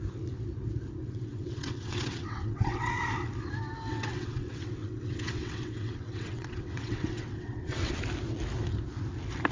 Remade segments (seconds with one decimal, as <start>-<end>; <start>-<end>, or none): 1.0-3.0; 3.9-8.0